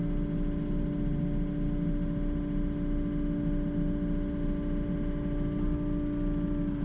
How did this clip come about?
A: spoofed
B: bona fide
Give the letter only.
B